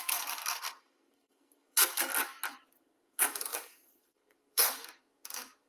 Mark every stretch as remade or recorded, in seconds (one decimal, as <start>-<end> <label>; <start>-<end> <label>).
0.0-2.1 remade; 2.1-2.7 recorded; 2.7-5.7 remade